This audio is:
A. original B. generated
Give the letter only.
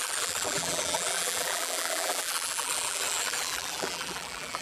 B